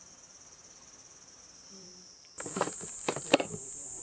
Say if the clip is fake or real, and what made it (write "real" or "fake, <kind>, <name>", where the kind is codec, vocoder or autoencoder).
fake, vocoder, BigVGAN v2